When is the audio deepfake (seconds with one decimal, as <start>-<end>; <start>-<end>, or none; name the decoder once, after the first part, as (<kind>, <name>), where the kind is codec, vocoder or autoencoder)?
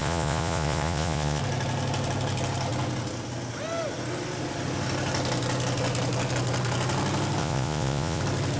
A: 0.0-1.4 (vocoder, Vocos); 7.4-8.2